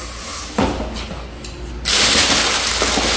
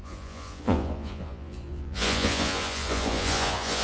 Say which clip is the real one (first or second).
first